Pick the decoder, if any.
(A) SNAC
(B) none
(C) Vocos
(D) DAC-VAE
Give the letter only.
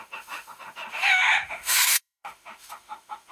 D